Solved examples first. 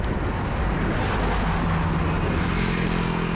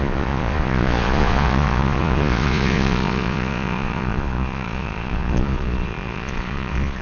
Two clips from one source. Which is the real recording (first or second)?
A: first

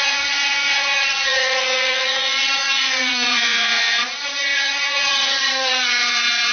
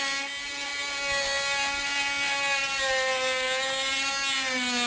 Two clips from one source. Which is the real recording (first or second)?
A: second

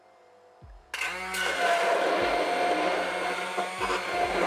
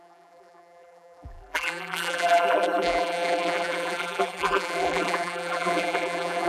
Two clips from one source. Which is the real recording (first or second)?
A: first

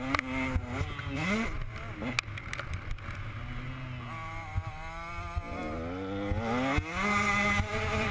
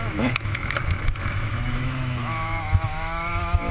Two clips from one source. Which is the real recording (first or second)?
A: first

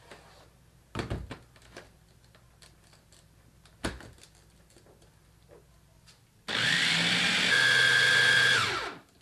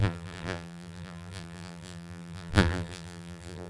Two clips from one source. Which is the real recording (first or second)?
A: first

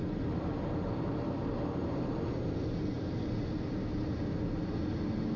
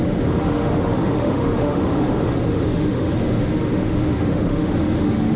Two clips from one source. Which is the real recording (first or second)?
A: first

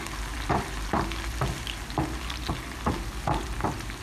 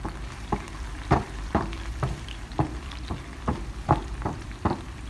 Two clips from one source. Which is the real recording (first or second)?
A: first